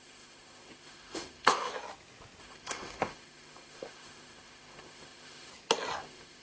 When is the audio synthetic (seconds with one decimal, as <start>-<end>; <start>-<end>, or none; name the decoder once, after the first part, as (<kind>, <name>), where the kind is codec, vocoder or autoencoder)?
0.0-1.7 (autoencoder, DAC-VAE); 2.4-5.5; 6.0-6.4